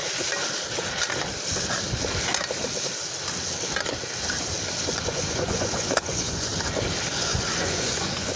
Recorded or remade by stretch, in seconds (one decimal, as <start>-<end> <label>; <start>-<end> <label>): 0.0-5.0 recorded; 5.0-6.5 remade; 6.5-7.1 recorded; 7.1-8.4 remade